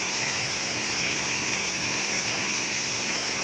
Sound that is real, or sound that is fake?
fake